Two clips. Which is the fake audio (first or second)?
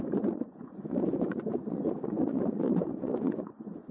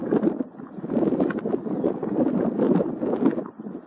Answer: first